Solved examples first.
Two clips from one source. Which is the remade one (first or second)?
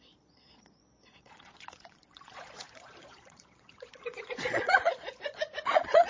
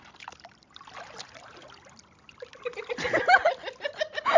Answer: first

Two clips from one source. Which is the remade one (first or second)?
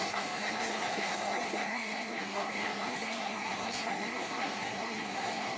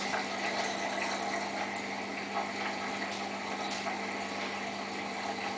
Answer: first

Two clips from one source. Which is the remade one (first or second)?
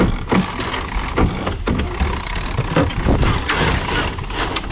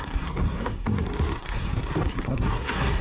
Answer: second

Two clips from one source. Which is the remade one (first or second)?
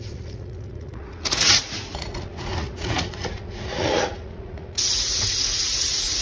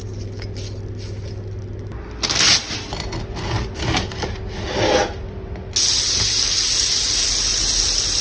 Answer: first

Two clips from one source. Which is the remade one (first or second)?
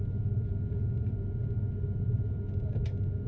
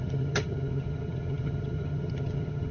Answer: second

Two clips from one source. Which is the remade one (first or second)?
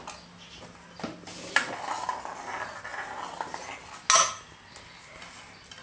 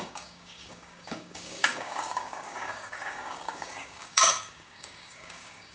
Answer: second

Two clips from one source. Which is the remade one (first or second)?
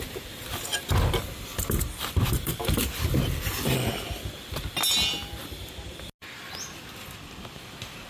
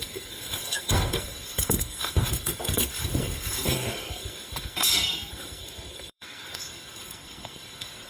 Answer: second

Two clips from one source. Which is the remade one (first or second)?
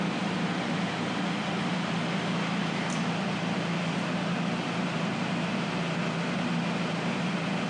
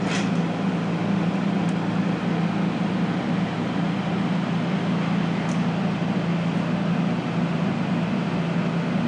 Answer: first